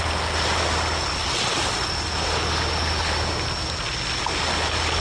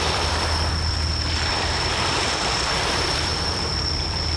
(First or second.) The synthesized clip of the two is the second